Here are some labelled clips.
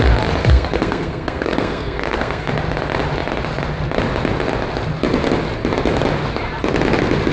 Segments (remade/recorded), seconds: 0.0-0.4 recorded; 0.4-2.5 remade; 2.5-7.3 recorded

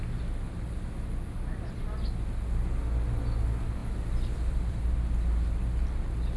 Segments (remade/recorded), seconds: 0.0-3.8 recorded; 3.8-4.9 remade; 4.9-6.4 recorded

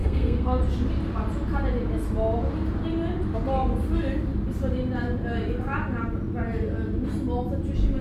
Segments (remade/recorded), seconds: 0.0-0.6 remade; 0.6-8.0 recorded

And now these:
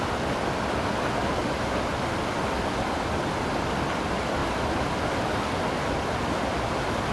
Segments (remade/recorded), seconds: 0.0-7.1 recorded

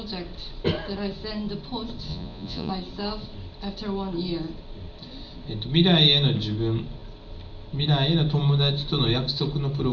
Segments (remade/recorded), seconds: 0.0-2.1 recorded; 2.1-2.7 remade; 2.7-9.9 recorded